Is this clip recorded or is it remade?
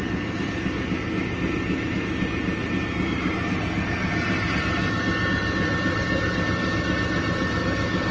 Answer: recorded